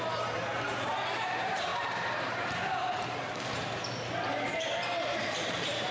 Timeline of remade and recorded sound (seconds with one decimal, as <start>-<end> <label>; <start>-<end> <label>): 0.0-5.9 remade